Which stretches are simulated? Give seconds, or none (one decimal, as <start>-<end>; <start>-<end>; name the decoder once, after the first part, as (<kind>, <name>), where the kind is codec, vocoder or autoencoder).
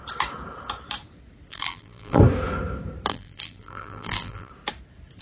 1.5-2.2 (vocoder, BigVGAN v2); 3.1-4.5